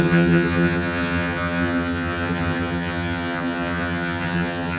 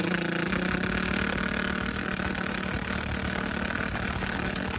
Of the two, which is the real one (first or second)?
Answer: second